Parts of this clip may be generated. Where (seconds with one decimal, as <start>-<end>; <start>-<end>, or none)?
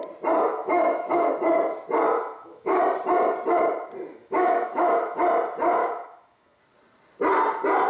0.6-1.3; 2.2-2.8; 4.1-5.2; 5.8-6.6